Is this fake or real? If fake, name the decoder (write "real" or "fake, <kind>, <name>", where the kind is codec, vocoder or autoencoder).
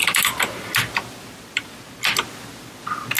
real